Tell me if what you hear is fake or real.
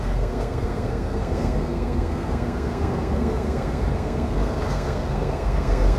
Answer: fake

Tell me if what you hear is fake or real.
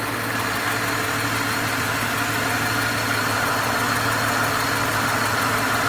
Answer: real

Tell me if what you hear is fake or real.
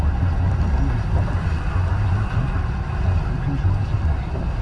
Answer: real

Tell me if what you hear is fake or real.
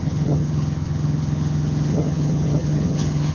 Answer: fake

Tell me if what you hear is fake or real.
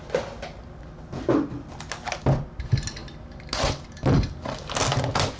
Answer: real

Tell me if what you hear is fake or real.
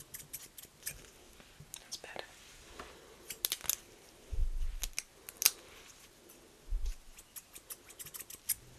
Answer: real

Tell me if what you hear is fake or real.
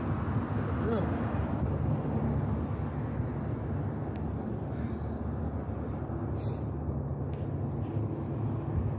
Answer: real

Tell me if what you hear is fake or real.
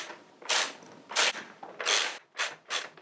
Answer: real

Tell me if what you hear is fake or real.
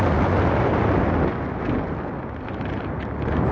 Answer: real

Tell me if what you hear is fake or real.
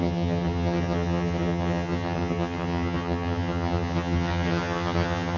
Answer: fake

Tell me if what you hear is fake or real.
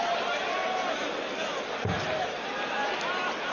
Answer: real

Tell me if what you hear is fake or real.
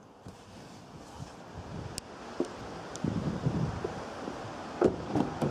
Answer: real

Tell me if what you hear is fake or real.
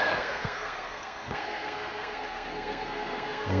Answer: fake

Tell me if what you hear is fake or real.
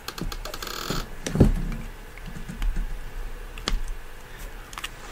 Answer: real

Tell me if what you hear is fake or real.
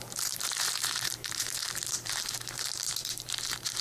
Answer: fake